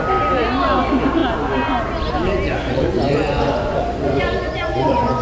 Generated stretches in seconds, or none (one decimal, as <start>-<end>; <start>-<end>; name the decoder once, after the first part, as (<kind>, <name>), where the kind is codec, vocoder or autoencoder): 2.5-5.2 (vocoder, Vocos)